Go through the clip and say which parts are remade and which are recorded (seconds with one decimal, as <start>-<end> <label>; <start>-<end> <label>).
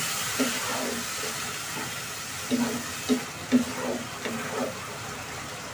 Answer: 0.0-0.7 remade; 0.7-4.1 recorded; 4.1-5.7 remade